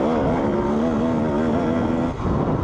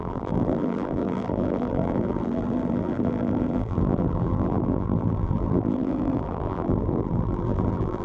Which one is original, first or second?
first